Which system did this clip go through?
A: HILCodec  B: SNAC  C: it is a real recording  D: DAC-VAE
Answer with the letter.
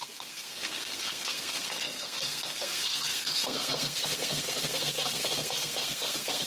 B